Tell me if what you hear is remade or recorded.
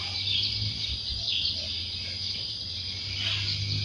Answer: recorded